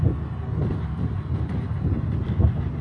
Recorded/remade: recorded